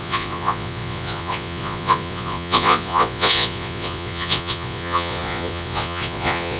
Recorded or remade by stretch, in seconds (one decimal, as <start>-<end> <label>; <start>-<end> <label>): 0.0-6.6 remade